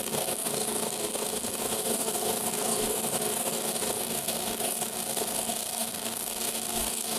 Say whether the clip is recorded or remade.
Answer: remade